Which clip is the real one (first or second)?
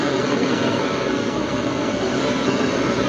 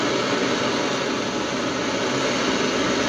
second